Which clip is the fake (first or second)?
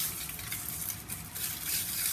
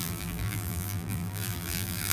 second